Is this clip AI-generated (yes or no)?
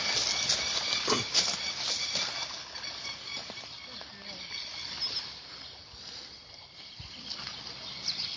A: no